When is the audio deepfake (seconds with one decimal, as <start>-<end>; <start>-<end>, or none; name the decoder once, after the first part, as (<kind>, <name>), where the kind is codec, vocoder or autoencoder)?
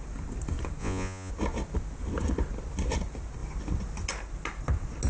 0.8-1.3 (vocoder, Vocos)